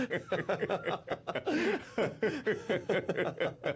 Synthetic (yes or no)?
no